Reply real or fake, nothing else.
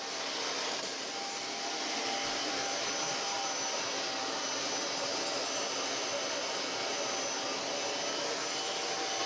real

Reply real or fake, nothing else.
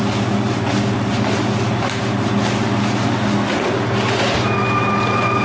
real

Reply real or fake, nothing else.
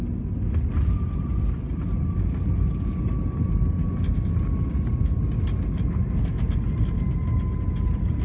real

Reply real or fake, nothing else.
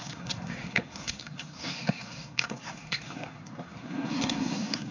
fake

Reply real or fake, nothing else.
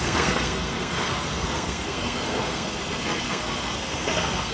fake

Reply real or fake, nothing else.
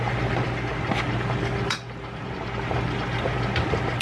real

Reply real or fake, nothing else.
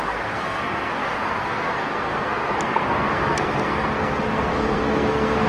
fake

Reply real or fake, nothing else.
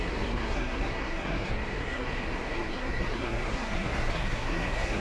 fake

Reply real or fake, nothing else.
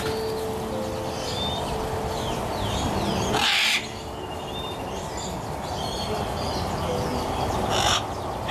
real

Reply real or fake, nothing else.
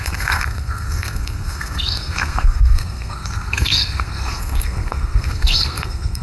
fake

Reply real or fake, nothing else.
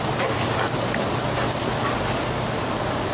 real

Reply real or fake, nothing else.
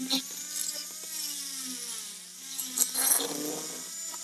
real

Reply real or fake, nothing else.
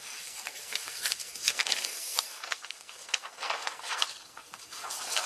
fake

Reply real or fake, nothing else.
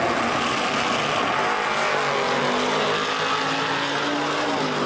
real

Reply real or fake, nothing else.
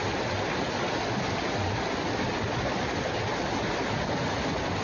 real